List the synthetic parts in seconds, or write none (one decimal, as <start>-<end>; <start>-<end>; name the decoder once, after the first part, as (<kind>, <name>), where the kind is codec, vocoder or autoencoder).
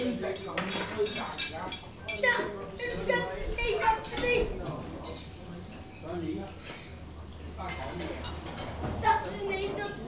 7.3-9.5 (vocoder, BigVGAN v2)